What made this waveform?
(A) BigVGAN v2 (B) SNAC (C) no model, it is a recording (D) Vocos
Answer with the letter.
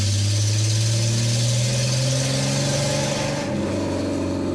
C